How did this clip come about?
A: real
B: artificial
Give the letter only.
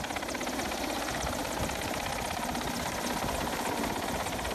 A